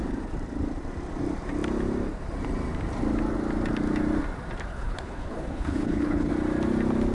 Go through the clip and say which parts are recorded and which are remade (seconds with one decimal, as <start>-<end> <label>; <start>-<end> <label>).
0.0-4.7 recorded; 4.7-6.3 remade; 6.3-7.1 recorded